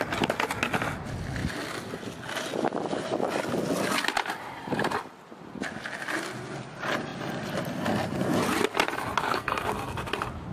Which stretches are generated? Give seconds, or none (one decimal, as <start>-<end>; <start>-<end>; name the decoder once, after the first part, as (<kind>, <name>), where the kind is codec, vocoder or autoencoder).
9.2-10.1 (codec, SNAC)